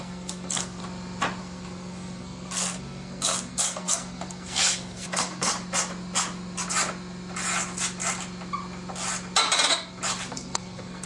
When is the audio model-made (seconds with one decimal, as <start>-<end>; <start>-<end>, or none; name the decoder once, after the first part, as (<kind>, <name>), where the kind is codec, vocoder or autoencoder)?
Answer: 0.0-0.8 (codec, SNAC); 1.4-5.5; 10.3-11.1